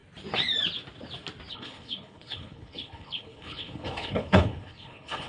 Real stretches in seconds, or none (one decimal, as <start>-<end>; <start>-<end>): 0.0-1.5